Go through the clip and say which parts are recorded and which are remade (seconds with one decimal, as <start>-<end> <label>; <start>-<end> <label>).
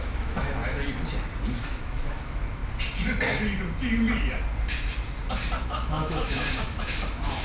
0.0-0.6 remade; 0.6-1.6 recorded; 1.6-2.6 remade; 2.6-5.6 recorded; 5.6-7.4 remade